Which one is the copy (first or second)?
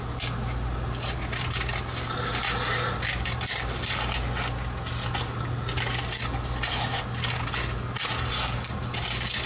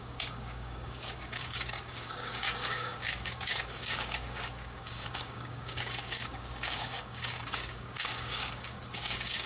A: second